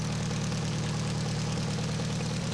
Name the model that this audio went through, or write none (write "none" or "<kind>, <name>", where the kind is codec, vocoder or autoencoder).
none